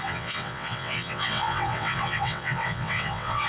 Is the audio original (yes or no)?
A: no